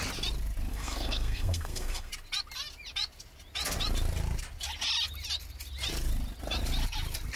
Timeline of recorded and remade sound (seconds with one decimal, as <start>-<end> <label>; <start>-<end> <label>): 0.0-0.7 recorded; 0.7-2.1 remade; 2.1-7.4 recorded